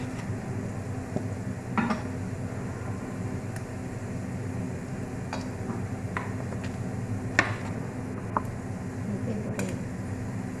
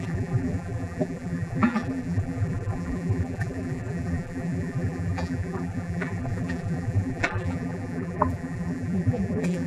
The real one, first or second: first